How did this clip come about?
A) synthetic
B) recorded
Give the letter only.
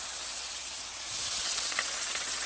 A